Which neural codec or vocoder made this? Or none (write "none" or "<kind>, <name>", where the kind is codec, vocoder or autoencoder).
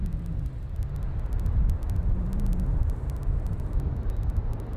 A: none